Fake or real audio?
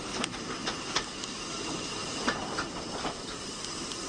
real